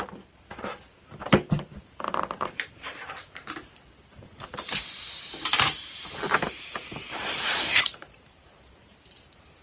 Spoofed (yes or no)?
yes